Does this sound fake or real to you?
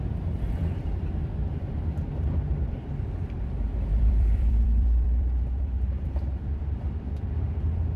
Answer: fake